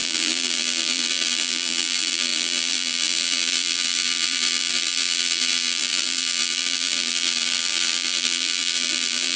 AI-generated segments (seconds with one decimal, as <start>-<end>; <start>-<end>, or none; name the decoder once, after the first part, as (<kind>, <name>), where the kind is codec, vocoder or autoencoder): 0.0-9.4 (vocoder, BigVGAN v2)